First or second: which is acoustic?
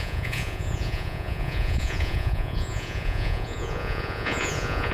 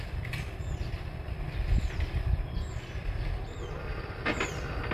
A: second